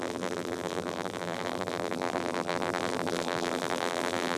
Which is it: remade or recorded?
remade